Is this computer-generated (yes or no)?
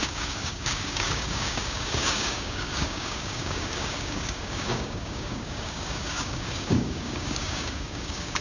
yes